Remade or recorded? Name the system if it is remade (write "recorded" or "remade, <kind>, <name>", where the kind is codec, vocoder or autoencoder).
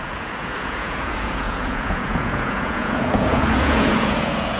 remade, vocoder, Vocos